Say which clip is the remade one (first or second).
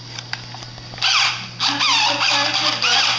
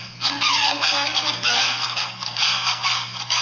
second